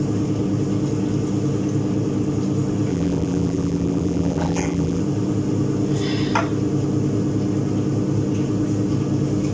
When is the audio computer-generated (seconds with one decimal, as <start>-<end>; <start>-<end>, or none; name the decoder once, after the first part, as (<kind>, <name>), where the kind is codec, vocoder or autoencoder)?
2.9-5.0 (vocoder, BigVGAN v2)